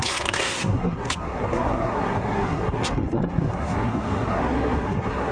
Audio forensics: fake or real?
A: fake